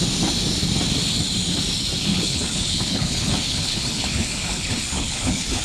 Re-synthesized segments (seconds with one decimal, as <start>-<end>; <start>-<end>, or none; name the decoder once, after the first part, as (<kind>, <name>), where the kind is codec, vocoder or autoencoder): 2.1-5.6 (codec, HILCodec)